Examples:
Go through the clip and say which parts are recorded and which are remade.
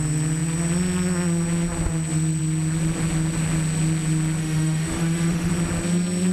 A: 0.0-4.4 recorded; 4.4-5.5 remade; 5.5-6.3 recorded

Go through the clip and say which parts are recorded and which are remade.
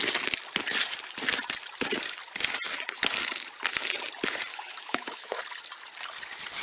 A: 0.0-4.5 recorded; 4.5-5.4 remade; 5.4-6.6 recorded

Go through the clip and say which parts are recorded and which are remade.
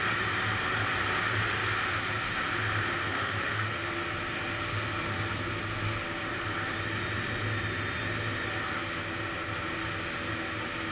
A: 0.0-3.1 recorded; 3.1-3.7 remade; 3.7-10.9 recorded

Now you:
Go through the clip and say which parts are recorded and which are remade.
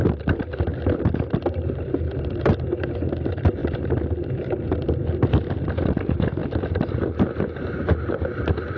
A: 0.0-8.8 recorded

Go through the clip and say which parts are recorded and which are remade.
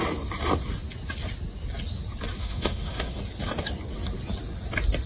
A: 0.0-2.4 recorded; 2.4-3.2 remade; 3.2-5.1 recorded